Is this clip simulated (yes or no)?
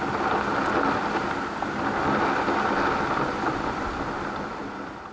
no